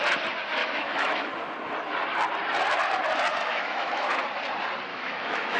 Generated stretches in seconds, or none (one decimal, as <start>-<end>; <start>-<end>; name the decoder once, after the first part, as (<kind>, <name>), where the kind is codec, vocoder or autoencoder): 0.6-1.3 (autoencoder, DAC-VAE); 3.4-4.2; 4.9-5.6

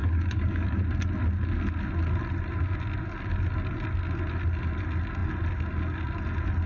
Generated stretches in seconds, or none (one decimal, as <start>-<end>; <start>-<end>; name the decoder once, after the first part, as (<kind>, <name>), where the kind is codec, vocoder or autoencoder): 0.0-0.8 (codec, DAC)